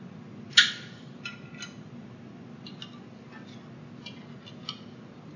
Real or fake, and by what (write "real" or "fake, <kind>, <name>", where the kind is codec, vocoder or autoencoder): real